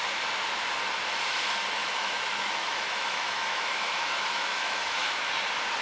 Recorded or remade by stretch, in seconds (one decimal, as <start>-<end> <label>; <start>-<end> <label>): 0.0-1.8 recorded; 1.8-5.3 remade; 5.3-5.8 recorded